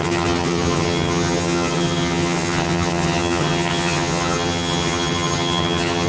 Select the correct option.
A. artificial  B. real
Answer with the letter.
A